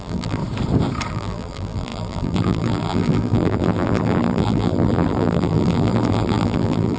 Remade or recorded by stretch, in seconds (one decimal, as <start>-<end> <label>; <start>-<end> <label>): 0.0-0.4 remade; 0.4-1.1 recorded; 1.1-7.0 remade